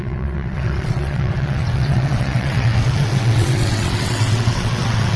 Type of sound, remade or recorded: remade